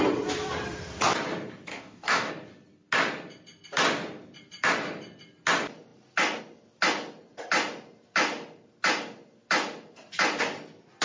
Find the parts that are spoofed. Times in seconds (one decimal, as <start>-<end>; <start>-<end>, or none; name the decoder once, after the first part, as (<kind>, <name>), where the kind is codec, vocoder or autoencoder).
1.7-2.3 (codec, DAC)